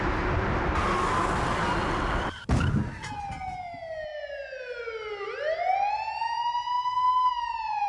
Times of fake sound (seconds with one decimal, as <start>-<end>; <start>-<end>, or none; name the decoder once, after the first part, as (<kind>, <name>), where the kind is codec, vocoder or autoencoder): none